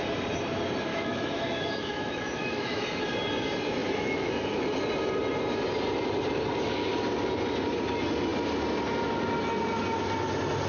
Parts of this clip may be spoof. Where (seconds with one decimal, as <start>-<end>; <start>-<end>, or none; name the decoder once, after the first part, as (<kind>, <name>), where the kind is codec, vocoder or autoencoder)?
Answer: 0.9-3.0 (autoencoder, DAC-VAE); 3.8-4.6